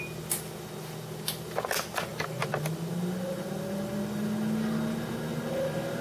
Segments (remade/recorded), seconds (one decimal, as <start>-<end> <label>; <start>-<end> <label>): 0.0-6.0 recorded